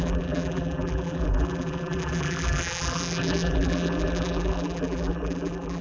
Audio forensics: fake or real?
fake